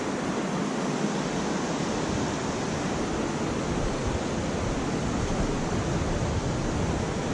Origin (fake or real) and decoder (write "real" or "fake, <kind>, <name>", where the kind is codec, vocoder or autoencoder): real